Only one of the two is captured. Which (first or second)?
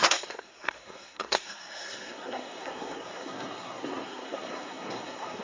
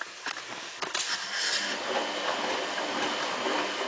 second